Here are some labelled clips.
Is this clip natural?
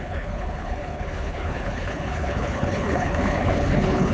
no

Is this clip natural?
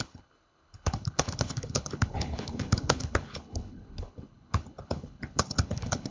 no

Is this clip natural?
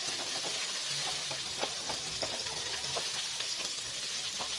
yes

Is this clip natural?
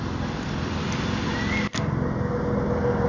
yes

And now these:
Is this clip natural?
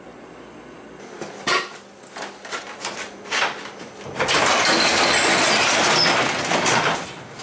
yes